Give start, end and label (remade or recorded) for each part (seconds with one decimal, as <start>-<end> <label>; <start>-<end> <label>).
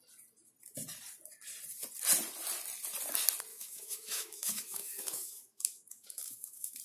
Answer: 0.0-3.5 recorded; 3.5-6.8 remade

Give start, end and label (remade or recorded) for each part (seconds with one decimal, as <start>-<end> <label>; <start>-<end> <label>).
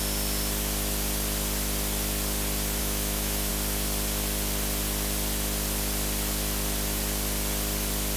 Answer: 0.0-2.8 recorded; 2.8-3.5 remade; 3.5-8.2 recorded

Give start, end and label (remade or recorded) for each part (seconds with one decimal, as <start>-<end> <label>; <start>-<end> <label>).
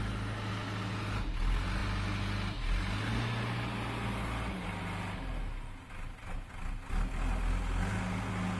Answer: 0.0-8.6 recorded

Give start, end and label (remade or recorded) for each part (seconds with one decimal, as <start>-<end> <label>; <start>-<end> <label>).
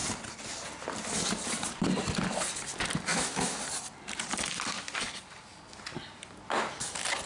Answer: 0.0-3.1 recorded; 3.1-3.6 remade; 3.6-7.3 recorded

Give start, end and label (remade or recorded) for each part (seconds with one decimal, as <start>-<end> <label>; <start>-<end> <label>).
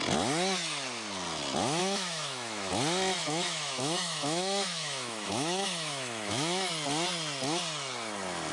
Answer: 0.0-1.8 recorded; 1.8-2.7 remade; 2.7-3.2 recorded; 3.2-6.7 remade; 6.7-8.5 recorded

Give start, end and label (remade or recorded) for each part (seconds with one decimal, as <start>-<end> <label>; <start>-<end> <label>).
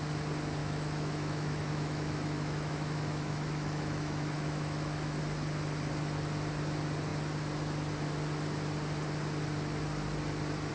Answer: 0.0-0.6 recorded; 0.6-5.2 remade; 5.2-10.7 recorded